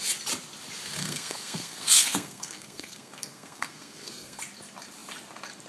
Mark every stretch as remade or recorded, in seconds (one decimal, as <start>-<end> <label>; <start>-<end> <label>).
0.0-1.0 recorded; 1.0-4.4 remade; 4.4-5.7 recorded